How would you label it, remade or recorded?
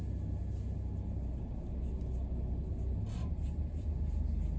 recorded